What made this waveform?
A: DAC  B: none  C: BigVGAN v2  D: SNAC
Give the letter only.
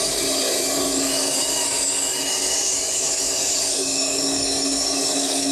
A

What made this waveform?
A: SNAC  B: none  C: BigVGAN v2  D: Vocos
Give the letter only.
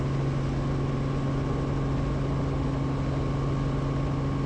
B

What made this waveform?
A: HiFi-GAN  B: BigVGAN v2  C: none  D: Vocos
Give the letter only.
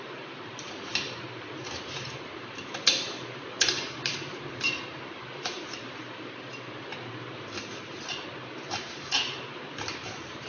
B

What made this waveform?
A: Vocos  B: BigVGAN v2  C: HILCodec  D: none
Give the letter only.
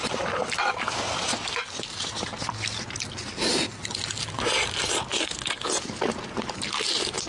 D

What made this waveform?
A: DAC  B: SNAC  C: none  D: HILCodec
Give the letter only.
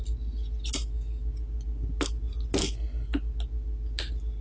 C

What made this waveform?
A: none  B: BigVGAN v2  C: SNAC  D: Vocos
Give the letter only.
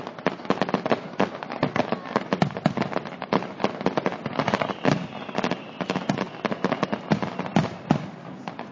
A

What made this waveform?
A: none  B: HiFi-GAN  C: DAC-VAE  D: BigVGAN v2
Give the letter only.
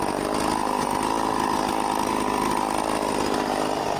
A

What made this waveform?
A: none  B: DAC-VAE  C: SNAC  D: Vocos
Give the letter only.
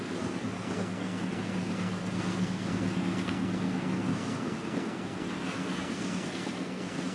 C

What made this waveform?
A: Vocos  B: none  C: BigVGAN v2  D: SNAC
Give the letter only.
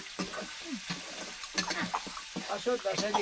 B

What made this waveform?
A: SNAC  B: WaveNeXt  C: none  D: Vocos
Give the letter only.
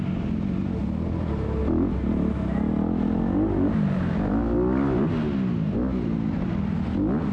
C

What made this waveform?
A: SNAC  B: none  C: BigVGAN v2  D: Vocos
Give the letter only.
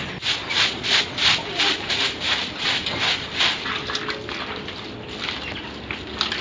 B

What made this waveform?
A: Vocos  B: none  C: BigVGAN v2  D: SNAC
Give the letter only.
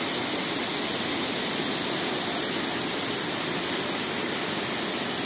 B